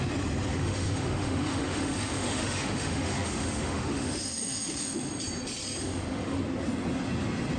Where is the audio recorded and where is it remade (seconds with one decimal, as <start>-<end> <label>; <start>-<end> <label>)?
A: 0.0-0.5 recorded; 0.5-5.1 remade; 5.1-5.8 recorded; 5.8-6.4 remade; 6.4-7.6 recorded

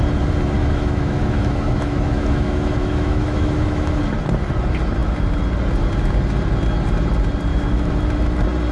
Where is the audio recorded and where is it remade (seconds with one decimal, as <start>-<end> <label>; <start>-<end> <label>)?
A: 0.0-0.6 recorded; 0.6-4.0 remade; 4.0-7.5 recorded; 7.5-8.0 remade; 8.0-8.7 recorded